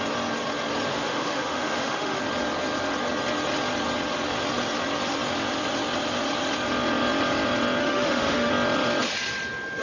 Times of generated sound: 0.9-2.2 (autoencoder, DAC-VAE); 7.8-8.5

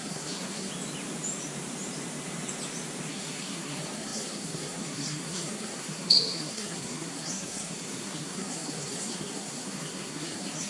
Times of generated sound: 0.0-0.7 (codec, SNAC); 3.1-10.7